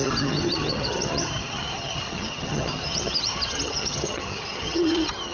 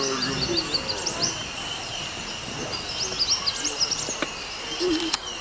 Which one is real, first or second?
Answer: second